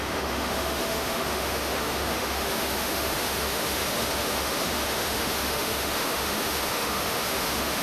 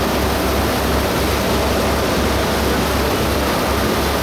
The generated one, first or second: first